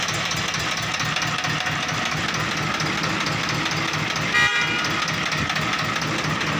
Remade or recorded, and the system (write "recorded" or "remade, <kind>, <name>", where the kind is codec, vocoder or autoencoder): recorded